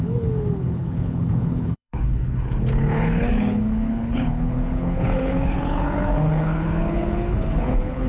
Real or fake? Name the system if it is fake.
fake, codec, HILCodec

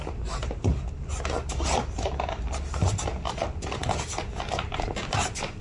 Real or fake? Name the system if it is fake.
real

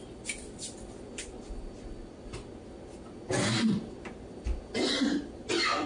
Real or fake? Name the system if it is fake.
real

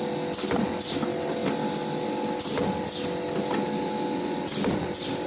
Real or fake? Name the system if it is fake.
real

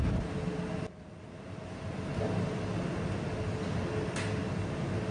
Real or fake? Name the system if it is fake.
real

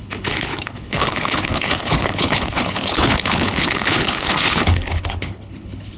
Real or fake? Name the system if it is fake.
fake, codec, HILCodec